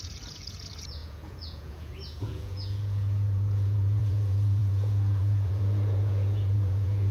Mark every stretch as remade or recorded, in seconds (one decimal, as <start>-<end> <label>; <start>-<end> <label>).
0.0-7.1 remade